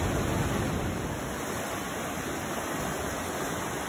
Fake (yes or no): no